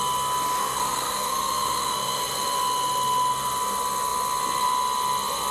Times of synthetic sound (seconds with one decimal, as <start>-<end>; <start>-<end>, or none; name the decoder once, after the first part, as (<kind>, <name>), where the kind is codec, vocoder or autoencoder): 0.6-2.2 (codec, SNAC)